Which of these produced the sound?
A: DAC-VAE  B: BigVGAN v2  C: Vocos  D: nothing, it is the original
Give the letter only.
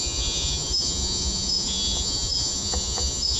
C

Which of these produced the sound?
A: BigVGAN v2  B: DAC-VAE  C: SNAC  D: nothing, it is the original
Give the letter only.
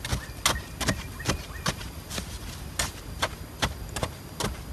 D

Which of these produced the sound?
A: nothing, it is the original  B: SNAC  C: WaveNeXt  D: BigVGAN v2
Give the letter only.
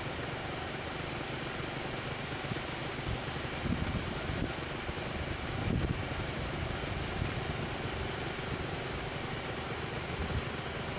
A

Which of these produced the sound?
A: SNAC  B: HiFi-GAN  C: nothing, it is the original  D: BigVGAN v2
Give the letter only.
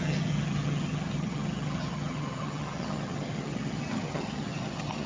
B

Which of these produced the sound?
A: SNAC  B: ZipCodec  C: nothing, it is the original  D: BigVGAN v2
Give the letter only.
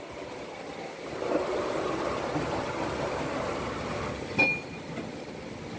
C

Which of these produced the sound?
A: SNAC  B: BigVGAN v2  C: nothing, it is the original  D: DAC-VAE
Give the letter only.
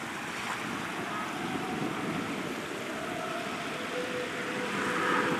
C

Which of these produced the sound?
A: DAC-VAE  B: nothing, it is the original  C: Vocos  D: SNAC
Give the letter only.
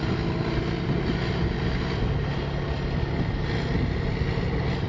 B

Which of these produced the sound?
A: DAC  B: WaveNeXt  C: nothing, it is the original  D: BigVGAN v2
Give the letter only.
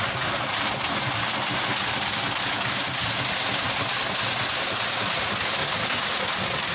C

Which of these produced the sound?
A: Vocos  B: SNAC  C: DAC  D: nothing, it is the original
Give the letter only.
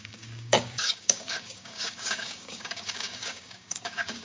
C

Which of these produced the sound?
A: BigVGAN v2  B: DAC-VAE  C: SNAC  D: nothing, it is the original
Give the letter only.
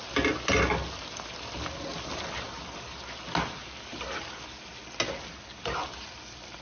D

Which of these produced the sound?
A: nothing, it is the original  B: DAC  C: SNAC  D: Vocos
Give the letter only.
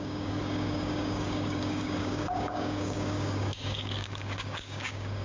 B